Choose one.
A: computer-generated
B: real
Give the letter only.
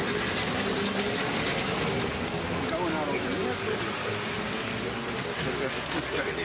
B